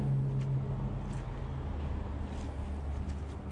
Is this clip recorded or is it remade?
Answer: recorded